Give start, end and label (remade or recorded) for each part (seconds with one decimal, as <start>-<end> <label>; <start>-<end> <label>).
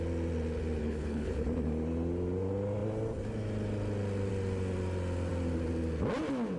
0.0-0.8 recorded; 0.8-1.3 remade; 1.3-6.6 recorded